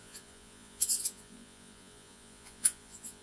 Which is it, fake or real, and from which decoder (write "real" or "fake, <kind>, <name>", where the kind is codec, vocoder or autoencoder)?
fake, vocoder, Vocos